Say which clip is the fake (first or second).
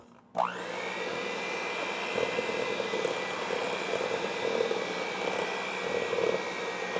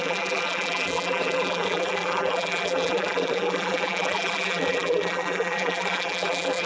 second